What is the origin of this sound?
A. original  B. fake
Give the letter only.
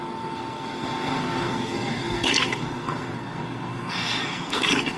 B